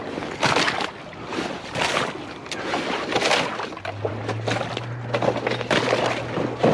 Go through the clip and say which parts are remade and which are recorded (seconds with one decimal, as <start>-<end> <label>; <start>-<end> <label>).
0.0-6.7 recorded